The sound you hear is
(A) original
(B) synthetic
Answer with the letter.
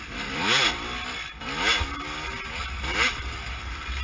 A